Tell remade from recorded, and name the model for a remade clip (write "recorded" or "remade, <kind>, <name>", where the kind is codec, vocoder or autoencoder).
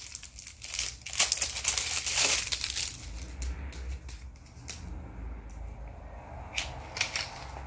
recorded